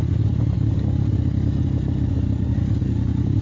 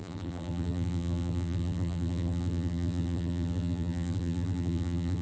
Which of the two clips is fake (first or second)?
second